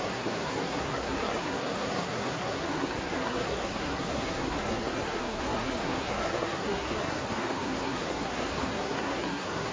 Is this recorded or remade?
remade